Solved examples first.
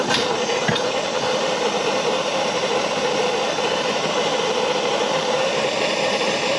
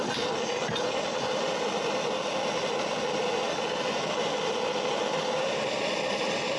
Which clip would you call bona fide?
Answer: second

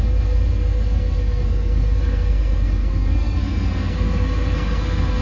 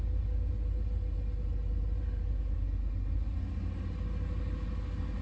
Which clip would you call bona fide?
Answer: second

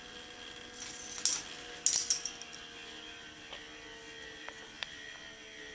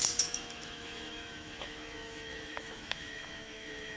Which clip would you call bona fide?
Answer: first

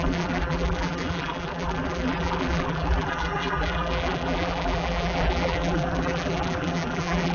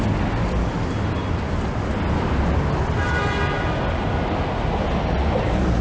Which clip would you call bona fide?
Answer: second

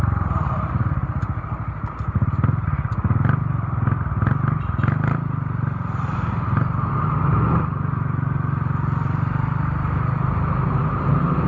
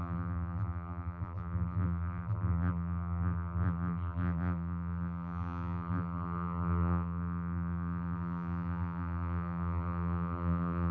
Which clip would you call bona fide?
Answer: first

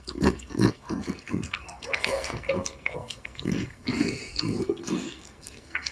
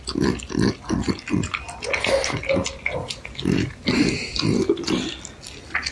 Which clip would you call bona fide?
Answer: second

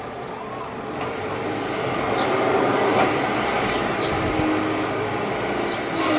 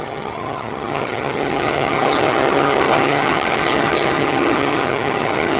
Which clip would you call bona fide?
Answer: first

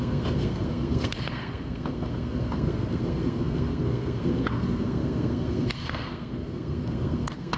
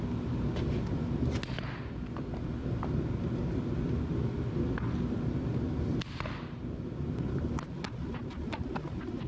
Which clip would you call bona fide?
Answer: second